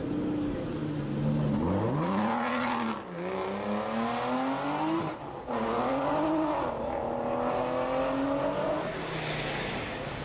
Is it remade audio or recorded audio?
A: recorded